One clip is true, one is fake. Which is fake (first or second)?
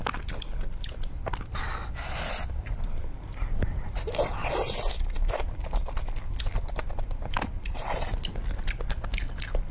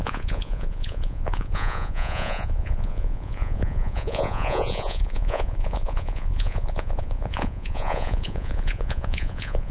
second